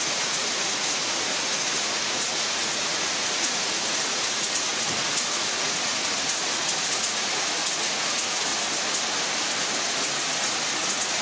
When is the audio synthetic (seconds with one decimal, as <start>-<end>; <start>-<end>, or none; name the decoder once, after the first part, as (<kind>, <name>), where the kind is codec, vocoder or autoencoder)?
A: 0.0-8.5 (vocoder, Vocos); 9.8-11.2